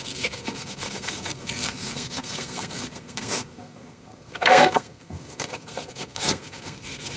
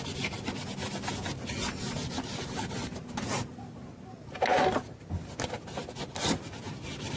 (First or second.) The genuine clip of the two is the second